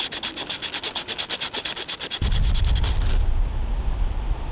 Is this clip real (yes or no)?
yes